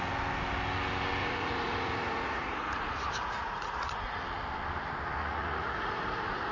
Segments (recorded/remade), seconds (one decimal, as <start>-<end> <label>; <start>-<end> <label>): 0.0-1.2 recorded; 1.2-4.2 remade; 4.2-5.2 recorded; 5.2-6.5 remade